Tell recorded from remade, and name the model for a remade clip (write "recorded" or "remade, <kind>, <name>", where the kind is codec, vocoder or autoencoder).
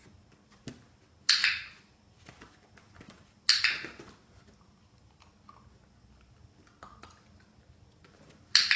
recorded